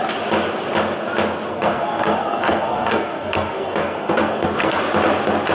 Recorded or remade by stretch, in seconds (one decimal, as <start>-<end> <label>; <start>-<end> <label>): 0.0-1.5 recorded; 1.5-4.8 remade; 4.8-5.5 recorded